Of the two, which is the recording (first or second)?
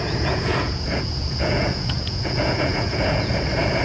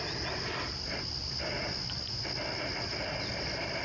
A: second